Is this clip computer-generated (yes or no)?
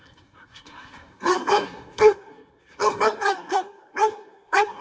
yes